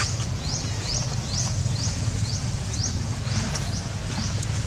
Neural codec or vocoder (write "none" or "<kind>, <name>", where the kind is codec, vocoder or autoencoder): vocoder, Vocos